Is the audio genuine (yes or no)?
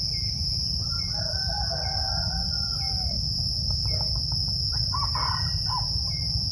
no